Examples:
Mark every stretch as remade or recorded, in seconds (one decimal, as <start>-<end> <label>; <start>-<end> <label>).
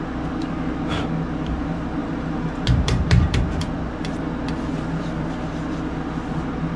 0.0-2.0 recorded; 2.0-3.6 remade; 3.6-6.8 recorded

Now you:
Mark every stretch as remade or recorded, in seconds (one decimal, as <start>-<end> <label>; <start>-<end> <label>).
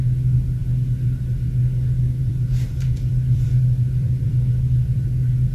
0.0-2.2 recorded; 2.2-5.5 remade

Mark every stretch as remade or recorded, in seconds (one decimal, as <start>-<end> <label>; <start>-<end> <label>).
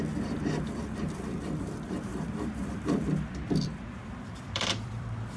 0.0-2.1 recorded; 2.1-5.4 remade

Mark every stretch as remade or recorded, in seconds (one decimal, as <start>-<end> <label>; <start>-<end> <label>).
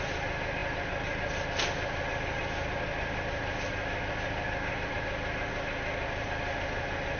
0.0-7.2 recorded